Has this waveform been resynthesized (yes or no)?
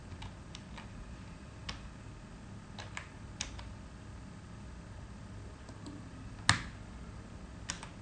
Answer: no